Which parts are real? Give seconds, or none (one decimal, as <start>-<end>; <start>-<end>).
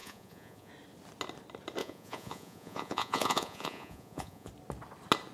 0.7-1.8; 4.5-5.3